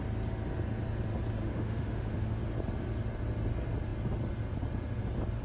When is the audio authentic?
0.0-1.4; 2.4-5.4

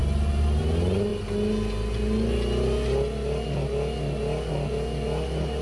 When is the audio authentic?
0.0-5.6

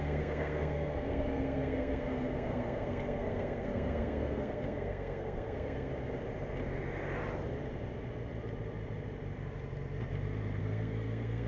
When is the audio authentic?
5.9-10.6